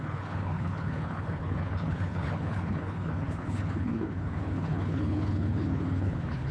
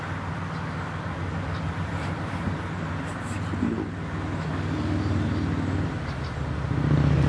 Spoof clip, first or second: first